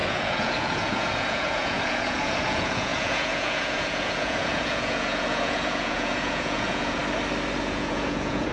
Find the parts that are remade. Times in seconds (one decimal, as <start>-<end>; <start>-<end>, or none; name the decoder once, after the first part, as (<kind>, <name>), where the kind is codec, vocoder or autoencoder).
0.0-7.0 (vocoder, Vocos); 7.6-8.5